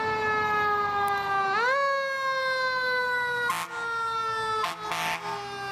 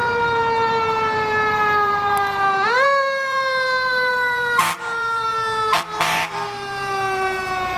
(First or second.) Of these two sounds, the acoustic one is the first